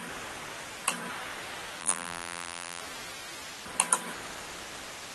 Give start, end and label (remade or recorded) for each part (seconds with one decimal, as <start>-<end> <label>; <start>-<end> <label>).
0.0-1.8 recorded; 1.8-2.8 remade; 2.8-5.1 recorded